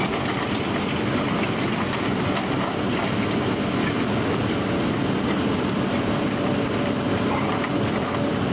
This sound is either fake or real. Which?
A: real